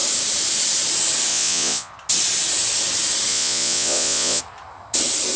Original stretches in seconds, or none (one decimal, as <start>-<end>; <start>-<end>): 0.0-1.3; 1.9-3.3; 4.4-5.4

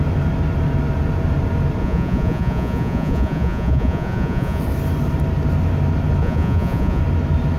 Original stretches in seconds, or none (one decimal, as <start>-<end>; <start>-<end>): 0.0-1.8; 4.6-6.2; 7.0-7.6